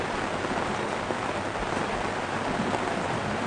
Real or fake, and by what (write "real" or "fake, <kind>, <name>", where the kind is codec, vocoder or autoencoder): real